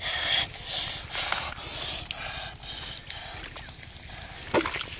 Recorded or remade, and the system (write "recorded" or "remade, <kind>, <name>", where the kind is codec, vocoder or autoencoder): recorded